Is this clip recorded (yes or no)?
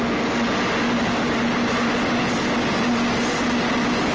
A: yes